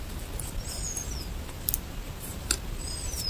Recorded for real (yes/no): yes